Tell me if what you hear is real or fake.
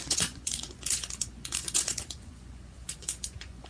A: fake